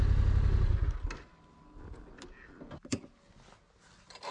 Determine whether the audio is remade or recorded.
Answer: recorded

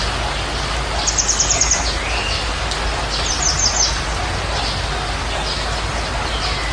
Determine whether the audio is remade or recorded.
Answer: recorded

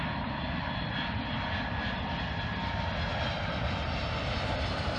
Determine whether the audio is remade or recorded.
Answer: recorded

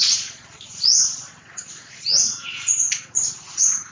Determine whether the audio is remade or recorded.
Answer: remade